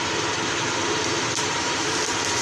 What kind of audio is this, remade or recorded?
remade